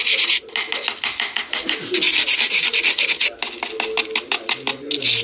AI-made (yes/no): no